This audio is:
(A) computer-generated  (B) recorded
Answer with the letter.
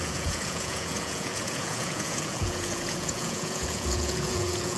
A